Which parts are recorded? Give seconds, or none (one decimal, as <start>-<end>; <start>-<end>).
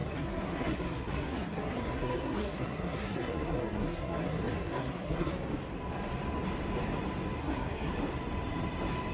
5.3-7.4; 7.9-9.1